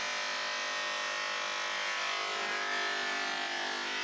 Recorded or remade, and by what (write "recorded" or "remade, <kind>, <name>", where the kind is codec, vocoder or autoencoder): recorded